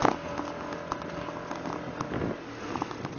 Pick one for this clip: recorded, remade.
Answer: recorded